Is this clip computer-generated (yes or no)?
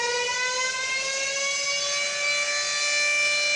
no